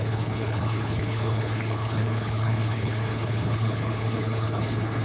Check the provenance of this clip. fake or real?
fake